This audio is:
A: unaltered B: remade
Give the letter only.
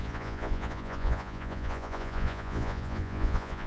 B